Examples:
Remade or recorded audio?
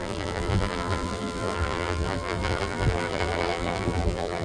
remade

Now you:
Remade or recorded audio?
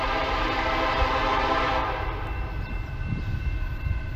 remade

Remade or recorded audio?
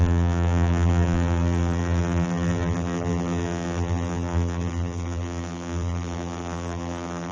remade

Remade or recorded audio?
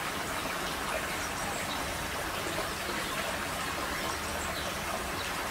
recorded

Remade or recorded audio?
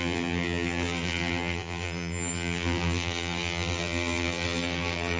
remade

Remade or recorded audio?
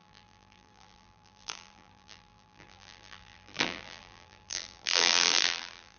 remade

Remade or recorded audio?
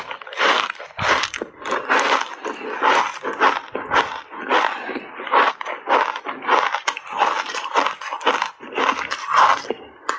recorded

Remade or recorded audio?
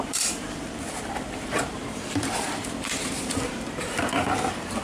remade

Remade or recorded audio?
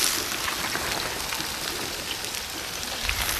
recorded